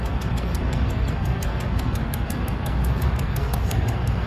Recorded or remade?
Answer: remade